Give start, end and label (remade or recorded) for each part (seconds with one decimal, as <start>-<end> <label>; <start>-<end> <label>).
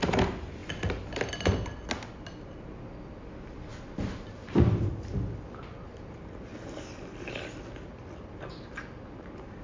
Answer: 0.0-9.6 recorded